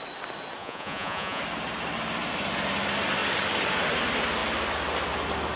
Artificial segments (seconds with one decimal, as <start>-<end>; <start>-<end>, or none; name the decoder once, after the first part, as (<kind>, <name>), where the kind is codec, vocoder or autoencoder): 0.6-1.4 (vocoder, Vocos)